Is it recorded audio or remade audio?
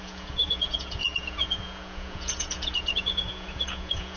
remade